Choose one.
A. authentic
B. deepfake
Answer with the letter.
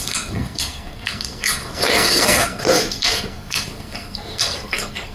B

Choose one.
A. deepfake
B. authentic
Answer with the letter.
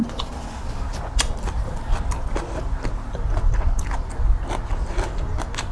B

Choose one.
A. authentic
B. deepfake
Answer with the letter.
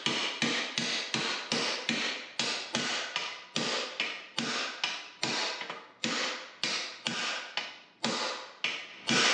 A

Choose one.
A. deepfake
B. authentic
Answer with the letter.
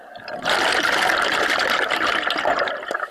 B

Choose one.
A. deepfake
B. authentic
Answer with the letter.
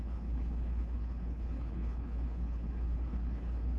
A